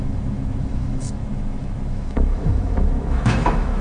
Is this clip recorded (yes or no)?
no